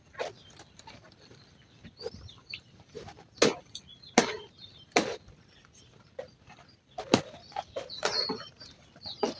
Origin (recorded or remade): recorded